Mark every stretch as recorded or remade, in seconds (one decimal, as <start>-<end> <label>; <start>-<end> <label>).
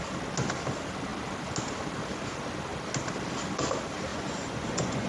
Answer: 0.0-4.1 recorded; 4.1-5.1 remade